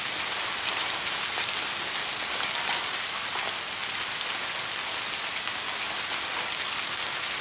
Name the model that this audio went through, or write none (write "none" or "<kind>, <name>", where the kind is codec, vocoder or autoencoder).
none